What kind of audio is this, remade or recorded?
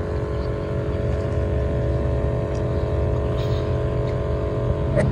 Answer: recorded